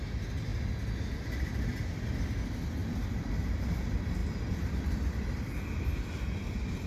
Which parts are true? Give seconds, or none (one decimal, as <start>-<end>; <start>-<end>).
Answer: 0.0-6.9